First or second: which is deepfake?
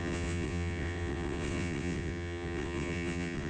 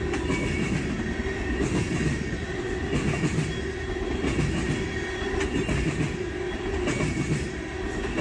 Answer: first